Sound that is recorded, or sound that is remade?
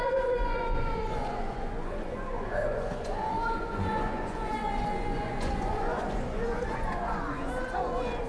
remade